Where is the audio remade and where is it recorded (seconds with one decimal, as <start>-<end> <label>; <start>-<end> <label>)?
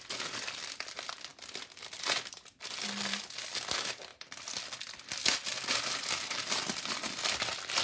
0.0-7.8 recorded